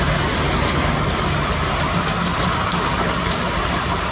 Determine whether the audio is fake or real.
real